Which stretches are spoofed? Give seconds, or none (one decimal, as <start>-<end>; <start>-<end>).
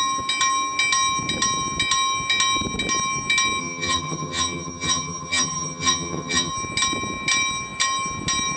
3.6-6.5